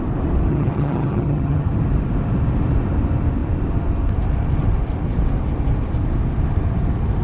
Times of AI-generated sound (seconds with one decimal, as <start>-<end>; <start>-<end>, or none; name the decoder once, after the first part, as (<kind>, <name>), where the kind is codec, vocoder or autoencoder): 0.5-1.7 (vocoder, HiFi-GAN)